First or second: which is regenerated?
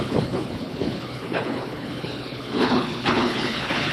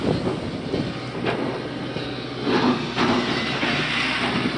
first